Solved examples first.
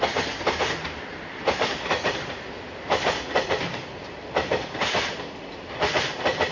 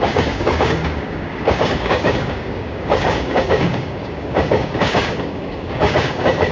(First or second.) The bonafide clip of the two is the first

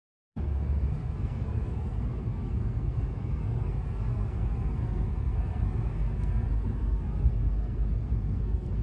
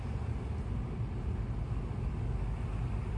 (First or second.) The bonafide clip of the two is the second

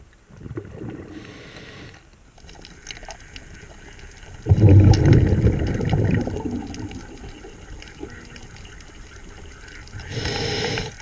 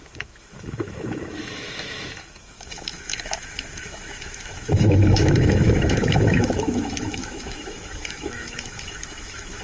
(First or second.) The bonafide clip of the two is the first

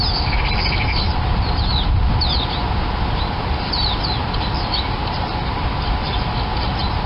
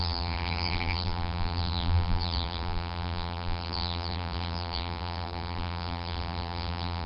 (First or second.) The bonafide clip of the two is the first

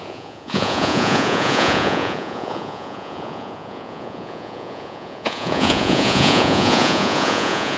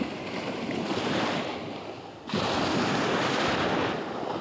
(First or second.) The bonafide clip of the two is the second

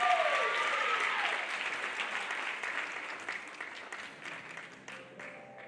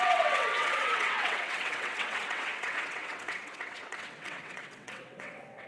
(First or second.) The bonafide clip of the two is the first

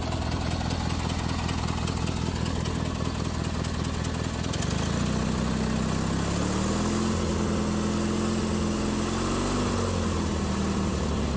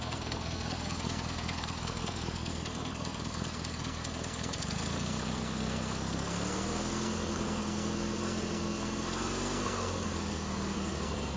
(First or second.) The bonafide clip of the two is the first